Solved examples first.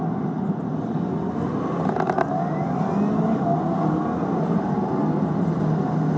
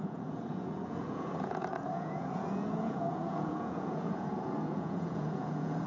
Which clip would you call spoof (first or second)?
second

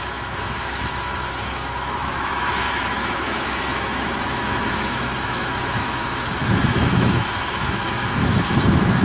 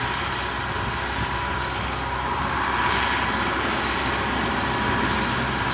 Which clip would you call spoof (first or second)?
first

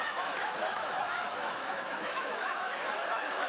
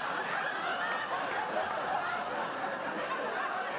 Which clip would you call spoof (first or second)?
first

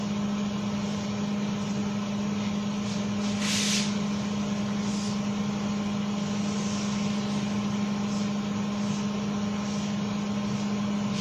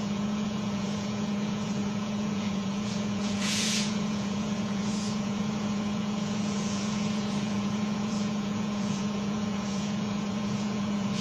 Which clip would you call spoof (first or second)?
second